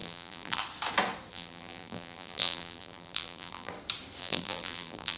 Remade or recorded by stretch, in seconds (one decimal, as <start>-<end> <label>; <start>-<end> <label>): 0.0-0.6 remade; 0.6-1.3 recorded; 1.3-3.7 remade; 3.7-4.2 recorded; 4.2-5.2 remade